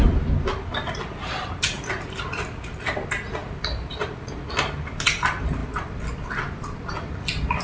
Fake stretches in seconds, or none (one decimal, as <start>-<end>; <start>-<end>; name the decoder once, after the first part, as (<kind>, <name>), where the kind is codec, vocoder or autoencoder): 0.0-2.9 (vocoder, BigVGAN v2); 3.4-4.4; 5.6-6.9

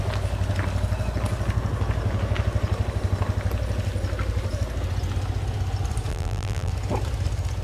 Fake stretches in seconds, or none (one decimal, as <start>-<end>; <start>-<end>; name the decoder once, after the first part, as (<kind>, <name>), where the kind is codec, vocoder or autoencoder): 6.1-6.7 (vocoder, BigVGAN v2)

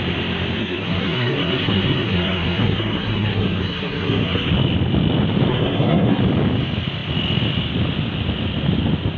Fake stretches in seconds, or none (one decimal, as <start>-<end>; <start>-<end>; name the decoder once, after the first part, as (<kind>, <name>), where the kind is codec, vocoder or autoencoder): 0.6-4.5 (codec, SNAC); 5.5-6.2

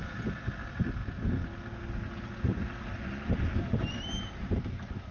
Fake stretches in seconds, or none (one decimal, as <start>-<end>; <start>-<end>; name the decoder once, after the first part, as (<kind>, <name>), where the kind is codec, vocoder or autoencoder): none

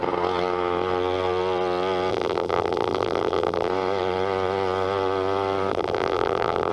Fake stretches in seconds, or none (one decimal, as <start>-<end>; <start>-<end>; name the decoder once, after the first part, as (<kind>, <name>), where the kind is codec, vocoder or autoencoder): 2.1-3.7 (vocoder, BigVGAN v2); 5.7-6.7

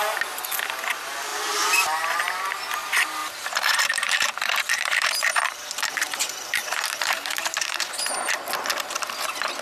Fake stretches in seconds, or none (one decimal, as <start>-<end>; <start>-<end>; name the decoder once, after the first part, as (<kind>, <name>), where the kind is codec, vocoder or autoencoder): 3.2-7.9 (vocoder, BigVGAN v2)

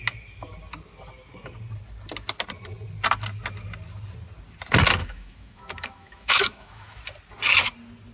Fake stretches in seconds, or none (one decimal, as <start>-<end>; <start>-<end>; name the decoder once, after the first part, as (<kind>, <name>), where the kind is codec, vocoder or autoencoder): 5.0-7.0 (autoencoder, DAC-VAE)